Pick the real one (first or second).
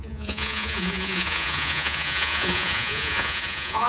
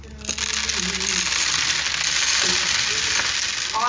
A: second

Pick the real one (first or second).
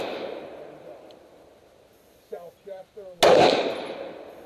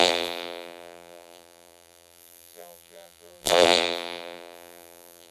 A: first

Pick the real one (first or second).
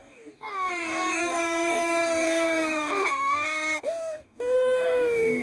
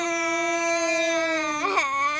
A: second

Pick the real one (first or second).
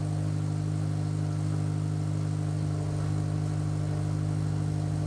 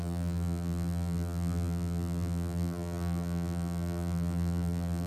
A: first